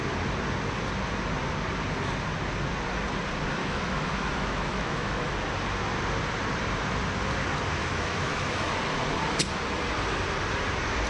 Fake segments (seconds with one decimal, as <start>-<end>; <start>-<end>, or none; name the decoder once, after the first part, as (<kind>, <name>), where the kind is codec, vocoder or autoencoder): 3.6-5.3 (autoencoder, DAC-VAE); 7.8-8.7